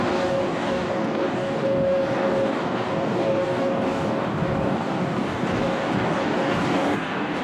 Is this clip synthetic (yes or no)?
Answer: yes